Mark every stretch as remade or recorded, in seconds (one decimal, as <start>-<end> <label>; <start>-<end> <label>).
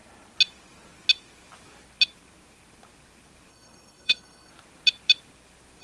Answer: 0.0-3.5 recorded; 3.5-4.5 remade; 4.5-5.8 recorded